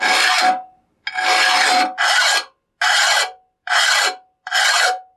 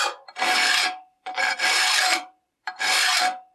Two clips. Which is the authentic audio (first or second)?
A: first